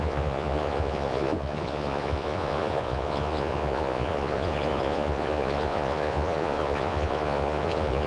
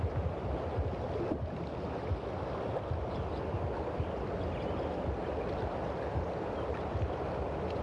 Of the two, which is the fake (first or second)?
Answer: first